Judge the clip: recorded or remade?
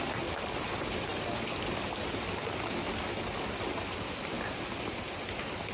recorded